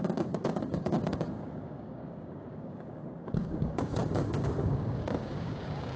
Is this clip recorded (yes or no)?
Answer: no